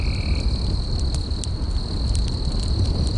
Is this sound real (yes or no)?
yes